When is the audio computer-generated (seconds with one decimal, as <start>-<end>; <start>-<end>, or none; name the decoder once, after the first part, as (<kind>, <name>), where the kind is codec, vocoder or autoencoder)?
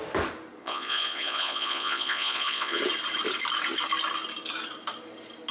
0.6-2.8 (vocoder, Vocos)